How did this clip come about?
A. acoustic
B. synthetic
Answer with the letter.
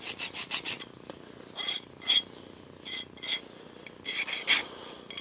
A